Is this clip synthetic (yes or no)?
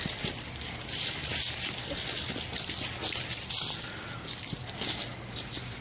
no